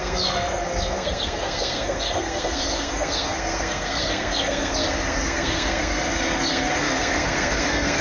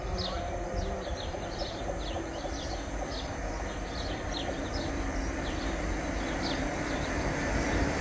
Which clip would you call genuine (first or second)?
second